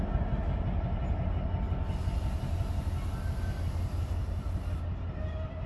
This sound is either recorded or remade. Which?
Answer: recorded